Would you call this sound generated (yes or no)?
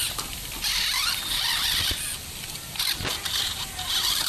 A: yes